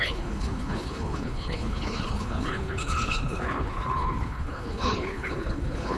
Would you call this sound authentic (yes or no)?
no